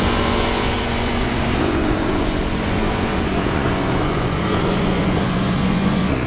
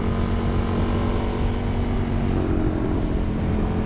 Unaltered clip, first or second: second